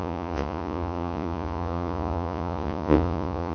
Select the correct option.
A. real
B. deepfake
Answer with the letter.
B